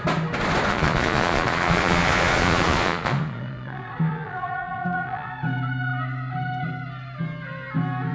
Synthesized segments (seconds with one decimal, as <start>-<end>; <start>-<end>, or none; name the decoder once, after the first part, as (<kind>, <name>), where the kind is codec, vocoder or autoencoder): 0.7-5.3 (vocoder, Vocos)